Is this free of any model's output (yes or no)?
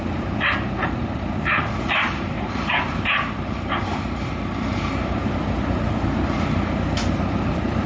no